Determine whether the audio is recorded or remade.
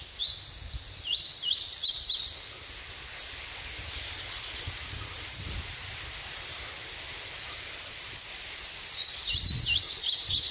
recorded